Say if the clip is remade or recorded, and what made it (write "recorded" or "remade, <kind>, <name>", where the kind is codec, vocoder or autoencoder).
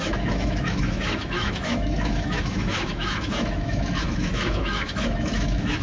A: remade, autoencoder, DAC-VAE